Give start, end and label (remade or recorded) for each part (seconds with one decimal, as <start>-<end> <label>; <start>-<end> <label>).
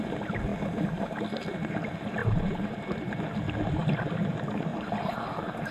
0.0-2.2 recorded; 2.2-3.2 remade; 3.2-4.7 recorded; 4.7-5.7 remade